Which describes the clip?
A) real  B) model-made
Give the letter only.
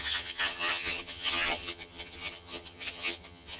B